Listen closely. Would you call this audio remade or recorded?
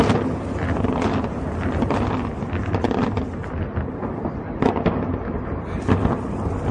recorded